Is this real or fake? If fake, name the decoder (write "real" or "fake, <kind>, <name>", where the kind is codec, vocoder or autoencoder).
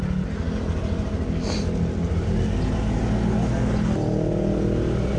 real